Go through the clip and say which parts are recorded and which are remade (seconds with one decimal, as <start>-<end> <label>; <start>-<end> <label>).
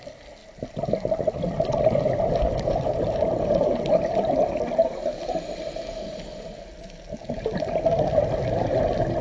0.0-0.4 recorded; 0.4-3.8 remade; 3.8-7.2 recorded; 7.2-8.7 remade; 8.7-9.2 recorded